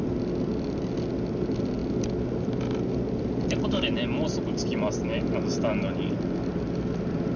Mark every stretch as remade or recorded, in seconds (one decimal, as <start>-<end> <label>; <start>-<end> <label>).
0.0-7.4 recorded